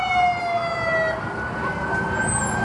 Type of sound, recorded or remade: recorded